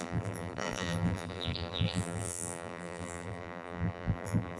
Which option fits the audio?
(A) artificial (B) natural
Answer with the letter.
A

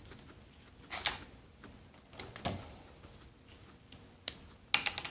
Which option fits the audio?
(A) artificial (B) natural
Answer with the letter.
B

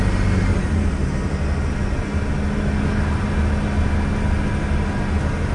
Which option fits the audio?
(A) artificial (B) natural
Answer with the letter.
B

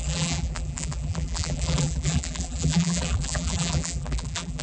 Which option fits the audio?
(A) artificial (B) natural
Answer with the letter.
A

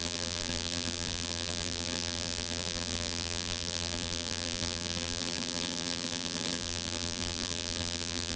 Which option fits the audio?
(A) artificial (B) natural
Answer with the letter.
A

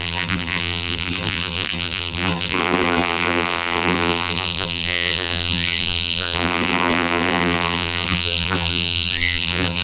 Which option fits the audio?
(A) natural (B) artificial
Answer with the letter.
B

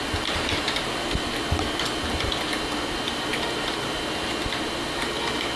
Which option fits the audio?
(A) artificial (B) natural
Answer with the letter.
B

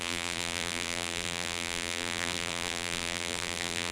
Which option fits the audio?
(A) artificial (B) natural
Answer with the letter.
A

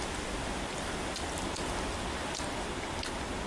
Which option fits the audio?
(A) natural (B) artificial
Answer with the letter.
A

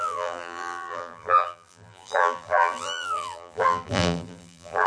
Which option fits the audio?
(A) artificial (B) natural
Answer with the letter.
A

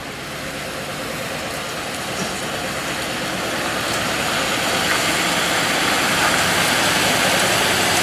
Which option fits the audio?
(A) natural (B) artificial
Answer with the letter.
A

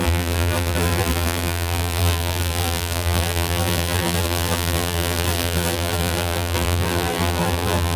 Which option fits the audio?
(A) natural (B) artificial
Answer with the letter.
B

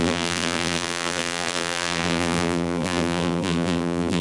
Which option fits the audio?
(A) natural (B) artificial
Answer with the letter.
B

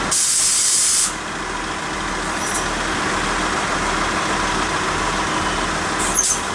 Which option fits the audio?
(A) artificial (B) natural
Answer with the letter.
B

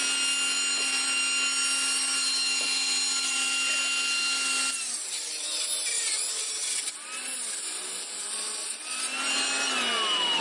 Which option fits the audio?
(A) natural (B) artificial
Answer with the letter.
A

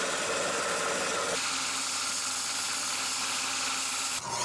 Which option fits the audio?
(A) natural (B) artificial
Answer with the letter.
A